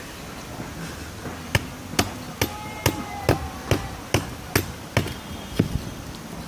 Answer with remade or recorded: recorded